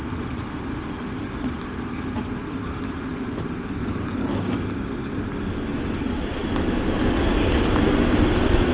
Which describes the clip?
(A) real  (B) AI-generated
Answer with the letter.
A